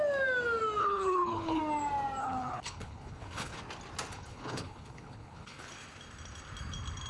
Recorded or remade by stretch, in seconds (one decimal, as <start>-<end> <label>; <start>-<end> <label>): 0.0-0.8 recorded; 0.8-1.6 remade; 1.6-2.2 recorded; 2.2-3.6 remade; 3.6-4.1 recorded; 4.1-5.7 remade; 5.7-7.1 recorded